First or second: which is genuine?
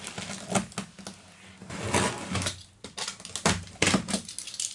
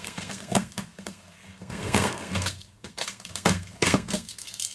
first